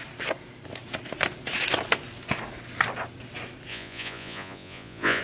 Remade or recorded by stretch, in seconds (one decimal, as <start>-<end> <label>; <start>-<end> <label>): 0.0-3.7 recorded; 3.7-5.2 remade